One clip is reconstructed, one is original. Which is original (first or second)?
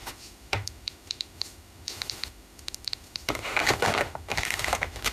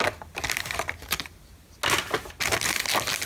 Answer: second